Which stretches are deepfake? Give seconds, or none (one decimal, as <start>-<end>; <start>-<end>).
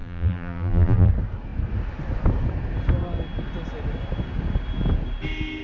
0.0-1.1